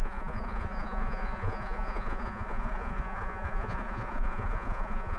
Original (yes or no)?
no